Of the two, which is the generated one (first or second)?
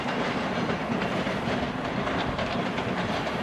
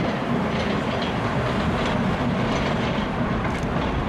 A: first